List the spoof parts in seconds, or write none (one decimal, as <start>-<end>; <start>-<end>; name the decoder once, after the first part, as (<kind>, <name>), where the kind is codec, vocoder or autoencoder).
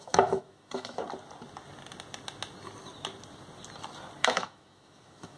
0.0-1.0 (autoencoder, DAC-VAE); 4.2-5.4